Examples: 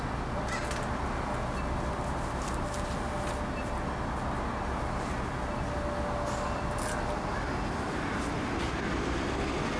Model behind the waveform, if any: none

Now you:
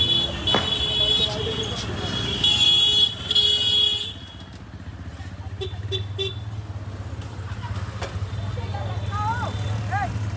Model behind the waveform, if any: none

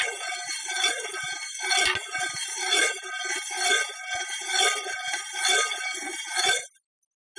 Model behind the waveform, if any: none